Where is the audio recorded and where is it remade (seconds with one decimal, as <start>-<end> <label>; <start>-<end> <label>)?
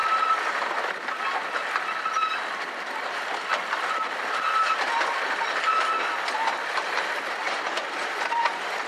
0.0-8.9 recorded